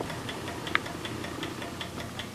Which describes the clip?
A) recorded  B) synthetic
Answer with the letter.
A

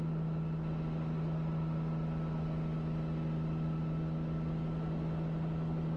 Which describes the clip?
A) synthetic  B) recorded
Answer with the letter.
B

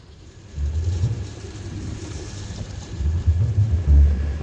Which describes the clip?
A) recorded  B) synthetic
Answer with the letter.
B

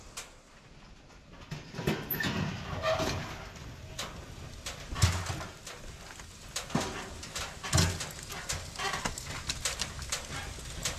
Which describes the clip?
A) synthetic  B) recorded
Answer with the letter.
B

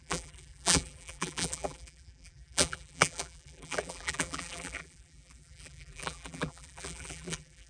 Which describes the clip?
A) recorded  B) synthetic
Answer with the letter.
B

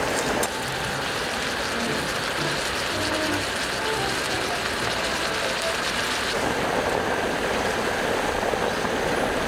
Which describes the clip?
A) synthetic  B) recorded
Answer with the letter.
B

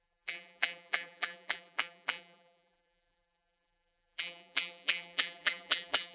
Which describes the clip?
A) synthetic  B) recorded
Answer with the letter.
A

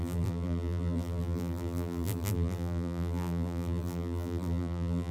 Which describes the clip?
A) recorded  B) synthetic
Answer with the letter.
B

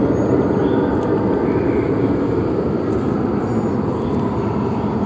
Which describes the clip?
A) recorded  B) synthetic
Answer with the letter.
A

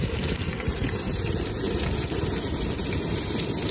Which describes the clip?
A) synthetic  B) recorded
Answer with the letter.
A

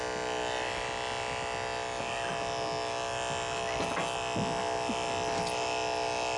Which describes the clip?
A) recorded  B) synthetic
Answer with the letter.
A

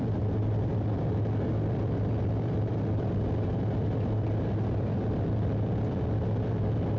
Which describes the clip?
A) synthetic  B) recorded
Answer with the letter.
A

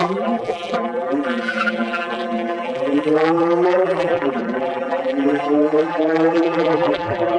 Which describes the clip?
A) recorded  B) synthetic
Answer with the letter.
B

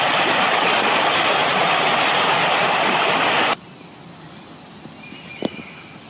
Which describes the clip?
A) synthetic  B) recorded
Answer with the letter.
B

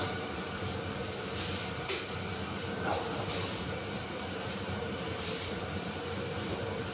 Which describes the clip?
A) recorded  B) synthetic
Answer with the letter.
B